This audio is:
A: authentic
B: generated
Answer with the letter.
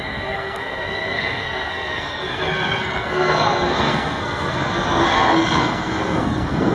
B